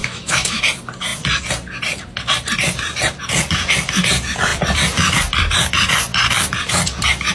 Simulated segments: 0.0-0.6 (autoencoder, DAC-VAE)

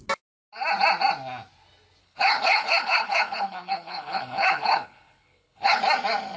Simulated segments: 2.0-5.8 (codec, HILCodec)